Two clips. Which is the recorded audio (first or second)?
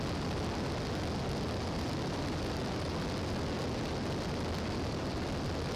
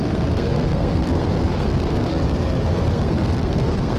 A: first